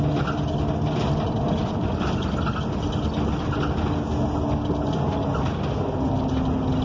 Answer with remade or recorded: recorded